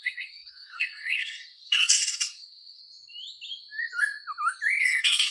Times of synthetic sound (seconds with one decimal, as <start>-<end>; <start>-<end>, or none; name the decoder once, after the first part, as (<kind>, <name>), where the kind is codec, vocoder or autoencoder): 0.0-2.8 (codec, SNAC); 4.8-5.3